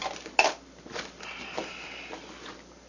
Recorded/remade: recorded